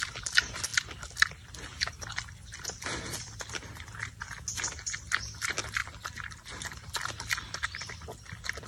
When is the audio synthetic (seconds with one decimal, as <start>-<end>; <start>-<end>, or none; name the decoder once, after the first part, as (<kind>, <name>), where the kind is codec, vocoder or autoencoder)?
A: none